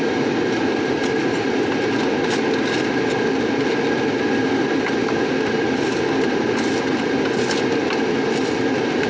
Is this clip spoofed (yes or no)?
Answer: no